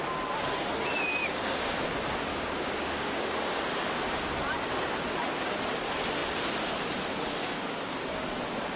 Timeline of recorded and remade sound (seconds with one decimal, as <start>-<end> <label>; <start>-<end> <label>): 0.0-1.2 recorded; 1.2-1.8 remade; 1.8-2.3 recorded; 2.3-4.2 remade; 4.2-7.4 recorded; 7.4-8.2 remade; 8.2-8.8 recorded